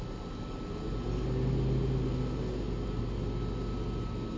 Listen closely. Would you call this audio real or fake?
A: real